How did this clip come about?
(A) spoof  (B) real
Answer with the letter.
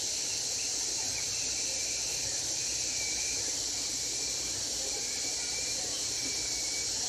B